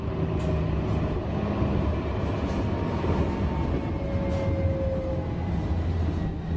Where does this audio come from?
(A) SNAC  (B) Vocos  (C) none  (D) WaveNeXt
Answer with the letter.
C